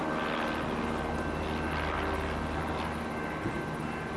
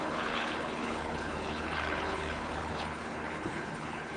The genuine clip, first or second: first